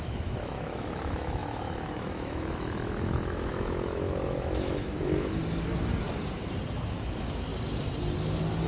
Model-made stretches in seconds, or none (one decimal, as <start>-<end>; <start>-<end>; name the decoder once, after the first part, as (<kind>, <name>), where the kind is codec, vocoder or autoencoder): 0.0-5.4 (autoencoder, DAC-VAE); 6.9-7.5